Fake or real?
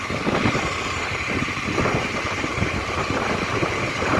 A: real